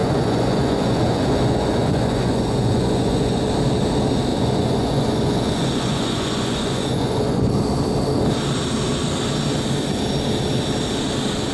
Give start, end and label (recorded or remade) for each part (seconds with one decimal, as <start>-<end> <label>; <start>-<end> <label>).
0.0-3.4 remade; 3.4-4.3 recorded; 4.3-7.5 remade; 7.5-11.5 recorded